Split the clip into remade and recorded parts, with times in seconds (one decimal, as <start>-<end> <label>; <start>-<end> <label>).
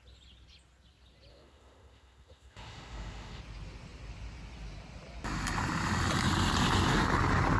0.0-1.3 recorded; 1.3-3.4 remade; 3.4-7.6 recorded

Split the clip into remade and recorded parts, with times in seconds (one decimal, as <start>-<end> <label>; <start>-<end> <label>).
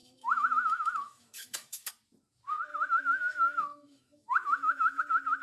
0.0-1.9 remade; 1.9-2.7 recorded; 2.7-5.0 remade; 5.0-5.4 recorded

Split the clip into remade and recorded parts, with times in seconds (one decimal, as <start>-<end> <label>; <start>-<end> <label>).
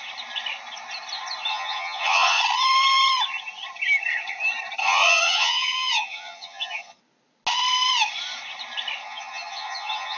0.0-1.5 recorded; 1.5-2.4 remade; 2.4-4.8 recorded; 4.8-7.0 remade; 7.0-9.0 recorded; 9.0-10.2 remade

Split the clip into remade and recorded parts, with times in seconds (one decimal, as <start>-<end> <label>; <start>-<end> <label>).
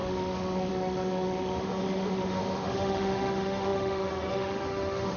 0.0-5.2 remade